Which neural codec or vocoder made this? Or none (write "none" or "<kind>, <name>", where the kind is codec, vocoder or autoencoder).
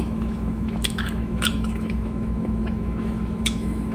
autoencoder, DAC-VAE